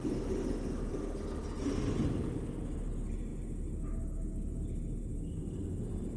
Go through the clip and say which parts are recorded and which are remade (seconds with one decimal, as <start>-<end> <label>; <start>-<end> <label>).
0.0-6.2 recorded